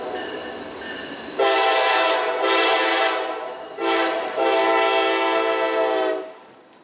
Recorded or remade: recorded